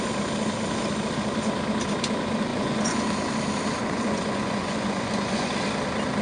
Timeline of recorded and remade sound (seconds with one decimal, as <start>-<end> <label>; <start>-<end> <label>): 0.0-2.5 recorded; 2.5-3.0 remade; 3.0-3.8 recorded; 3.8-5.5 remade; 5.5-6.2 recorded